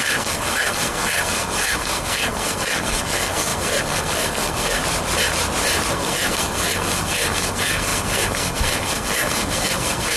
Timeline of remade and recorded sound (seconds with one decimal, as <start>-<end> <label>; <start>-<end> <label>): 0.0-4.8 remade; 4.8-5.9 recorded; 5.9-10.2 remade